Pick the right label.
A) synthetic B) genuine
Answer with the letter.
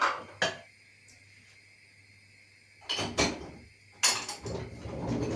B